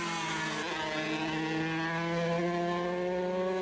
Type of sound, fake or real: real